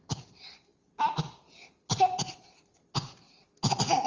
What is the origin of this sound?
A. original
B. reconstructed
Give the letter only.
A